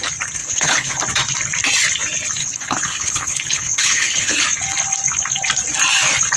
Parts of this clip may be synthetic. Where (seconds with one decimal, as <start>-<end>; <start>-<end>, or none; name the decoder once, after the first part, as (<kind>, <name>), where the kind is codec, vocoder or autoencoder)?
0.4-1.0 (codec, HILCodec); 2.4-4.4